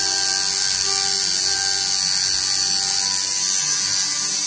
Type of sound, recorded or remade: recorded